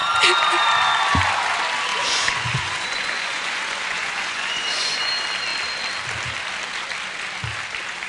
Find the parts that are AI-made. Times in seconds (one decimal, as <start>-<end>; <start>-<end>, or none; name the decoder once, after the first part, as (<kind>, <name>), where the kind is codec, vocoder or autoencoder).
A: 1.9-5.1 (vocoder, Vocos)